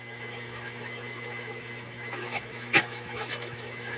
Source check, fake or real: fake